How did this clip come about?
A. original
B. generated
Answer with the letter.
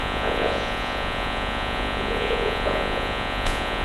B